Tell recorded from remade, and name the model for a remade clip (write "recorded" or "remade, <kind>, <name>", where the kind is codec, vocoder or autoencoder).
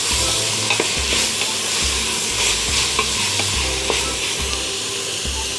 recorded